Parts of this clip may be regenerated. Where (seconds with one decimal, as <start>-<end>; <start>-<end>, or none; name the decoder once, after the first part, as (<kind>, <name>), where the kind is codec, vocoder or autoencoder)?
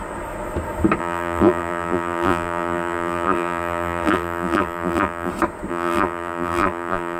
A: 1.0-5.3 (vocoder, BigVGAN v2); 5.7-7.2